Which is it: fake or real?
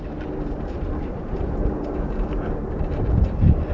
fake